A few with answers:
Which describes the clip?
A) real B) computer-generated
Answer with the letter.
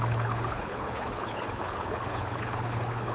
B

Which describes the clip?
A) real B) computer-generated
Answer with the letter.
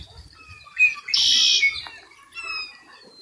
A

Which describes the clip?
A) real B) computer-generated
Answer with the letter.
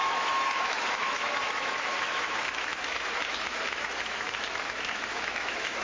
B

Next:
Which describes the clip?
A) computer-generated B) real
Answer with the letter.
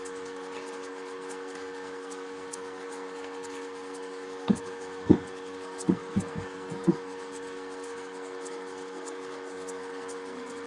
A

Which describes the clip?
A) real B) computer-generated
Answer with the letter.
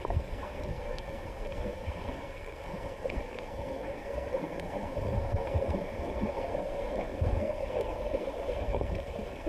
B